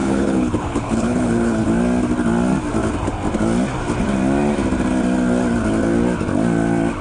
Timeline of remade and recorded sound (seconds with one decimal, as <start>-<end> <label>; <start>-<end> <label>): 0.0-1.7 remade; 1.7-7.0 recorded